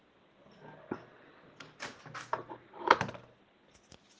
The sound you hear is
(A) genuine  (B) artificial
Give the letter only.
A